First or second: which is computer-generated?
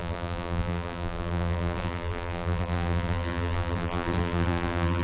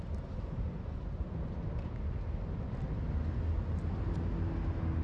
first